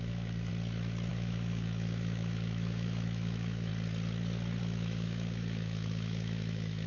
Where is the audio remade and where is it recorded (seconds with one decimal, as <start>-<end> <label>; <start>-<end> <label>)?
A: 0.0-0.5 remade; 0.5-1.1 recorded; 1.1-3.7 remade; 3.7-4.6 recorded; 4.6-6.9 remade